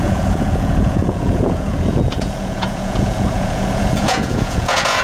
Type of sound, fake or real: fake